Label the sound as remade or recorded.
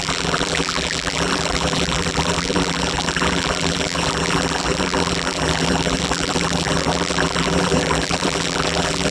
remade